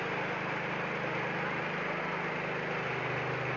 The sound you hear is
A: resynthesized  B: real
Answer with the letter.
B